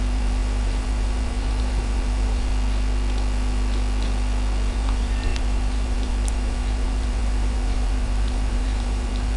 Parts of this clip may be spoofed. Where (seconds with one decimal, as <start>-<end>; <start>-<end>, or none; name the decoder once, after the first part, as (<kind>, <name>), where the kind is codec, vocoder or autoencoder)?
0.0-2.5 (vocoder, BigVGAN v2); 4.7-9.4